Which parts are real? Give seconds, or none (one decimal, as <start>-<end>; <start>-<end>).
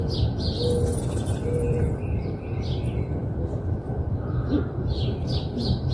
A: 0.0-0.9; 4.1-5.9